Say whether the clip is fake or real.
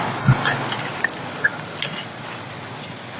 real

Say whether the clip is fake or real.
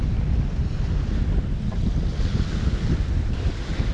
real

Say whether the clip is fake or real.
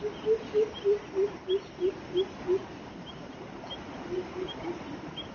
real